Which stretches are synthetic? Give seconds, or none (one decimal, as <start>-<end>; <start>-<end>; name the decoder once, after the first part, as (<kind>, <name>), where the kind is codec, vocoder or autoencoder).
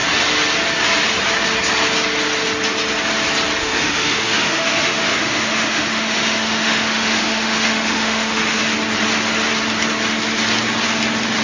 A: 3.6-8.6 (autoencoder, DAC-VAE)